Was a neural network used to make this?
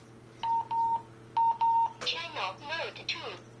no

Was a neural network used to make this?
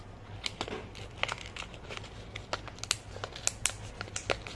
no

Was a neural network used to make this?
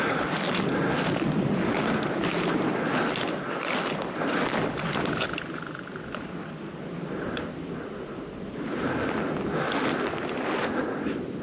no